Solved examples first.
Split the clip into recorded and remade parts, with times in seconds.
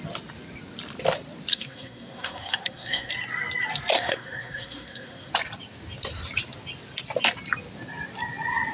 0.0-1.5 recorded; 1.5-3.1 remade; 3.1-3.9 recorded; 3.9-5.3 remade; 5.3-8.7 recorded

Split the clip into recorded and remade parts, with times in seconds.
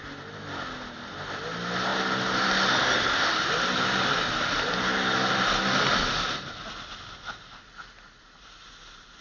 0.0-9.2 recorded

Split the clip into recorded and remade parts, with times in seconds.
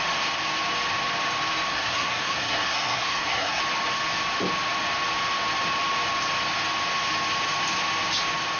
0.0-1.7 recorded; 1.7-3.6 remade; 3.6-8.6 recorded